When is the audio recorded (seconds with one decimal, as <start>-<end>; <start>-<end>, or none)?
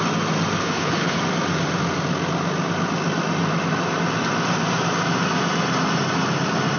0.0-0.6; 1.2-6.8